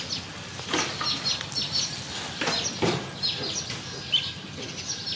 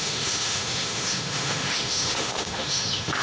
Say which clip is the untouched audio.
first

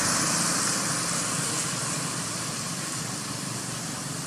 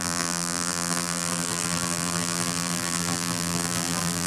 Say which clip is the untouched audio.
first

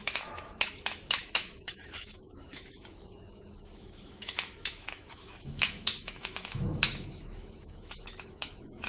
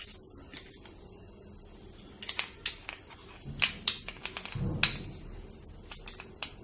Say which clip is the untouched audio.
second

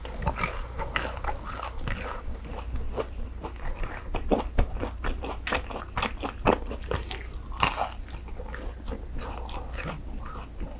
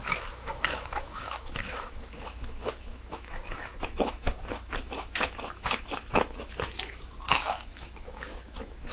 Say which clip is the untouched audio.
first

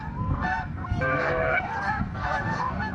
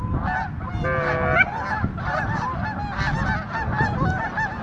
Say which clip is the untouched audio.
second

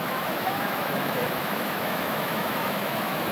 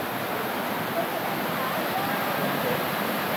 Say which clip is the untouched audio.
second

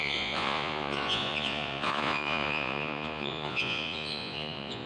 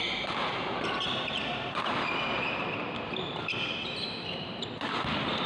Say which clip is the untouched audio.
second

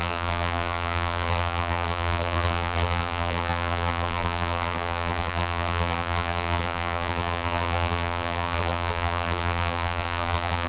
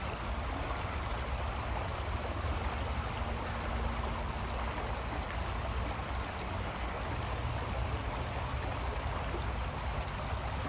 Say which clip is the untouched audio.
second